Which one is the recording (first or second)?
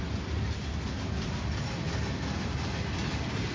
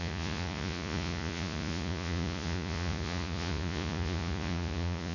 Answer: first